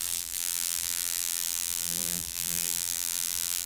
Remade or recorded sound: remade